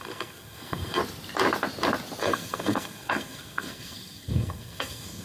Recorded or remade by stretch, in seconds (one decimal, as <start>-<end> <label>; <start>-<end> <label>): 0.0-1.0 remade; 1.0-2.2 recorded; 2.2-5.2 remade